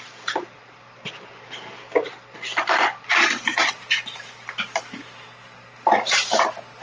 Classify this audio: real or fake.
real